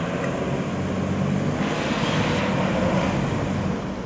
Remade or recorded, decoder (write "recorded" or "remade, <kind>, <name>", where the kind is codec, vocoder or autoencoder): recorded